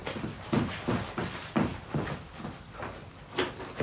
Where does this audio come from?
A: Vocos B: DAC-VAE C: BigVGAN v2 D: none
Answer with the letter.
D